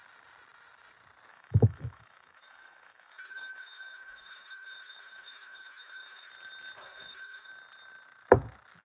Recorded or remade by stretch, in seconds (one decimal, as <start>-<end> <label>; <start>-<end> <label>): 0.0-1.3 recorded; 1.3-6.3 remade; 6.3-6.8 recorded; 6.8-7.5 remade; 7.5-8.8 recorded